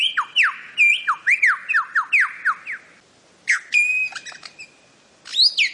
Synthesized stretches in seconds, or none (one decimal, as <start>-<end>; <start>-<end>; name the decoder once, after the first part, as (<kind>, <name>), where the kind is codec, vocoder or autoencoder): none